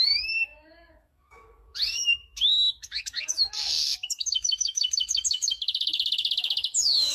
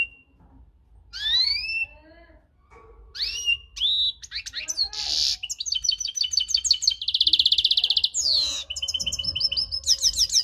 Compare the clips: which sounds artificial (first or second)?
first